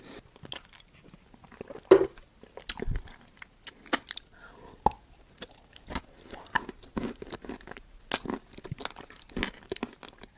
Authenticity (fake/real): real